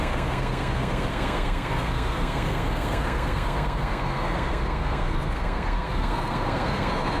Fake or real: fake